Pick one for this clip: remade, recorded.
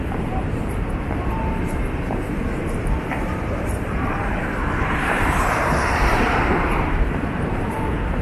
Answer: remade